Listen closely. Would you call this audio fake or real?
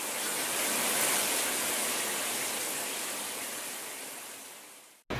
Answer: real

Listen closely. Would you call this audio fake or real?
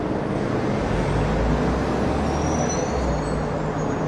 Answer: real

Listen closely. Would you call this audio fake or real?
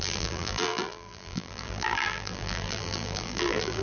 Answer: fake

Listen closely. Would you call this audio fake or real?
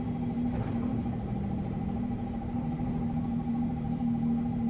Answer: fake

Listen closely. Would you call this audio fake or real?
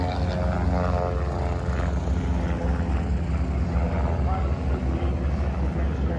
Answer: real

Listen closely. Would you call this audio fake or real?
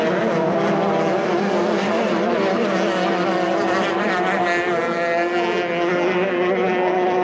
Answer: real